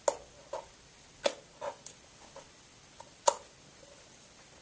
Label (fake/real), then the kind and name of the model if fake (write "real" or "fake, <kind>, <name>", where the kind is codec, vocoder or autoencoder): real